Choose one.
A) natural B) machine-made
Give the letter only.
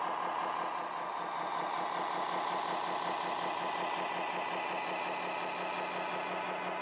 A